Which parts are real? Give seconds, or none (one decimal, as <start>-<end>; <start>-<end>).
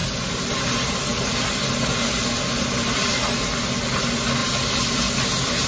0.0-5.7